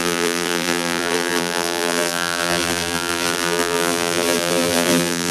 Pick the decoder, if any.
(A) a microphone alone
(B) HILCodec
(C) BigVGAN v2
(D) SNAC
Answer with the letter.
C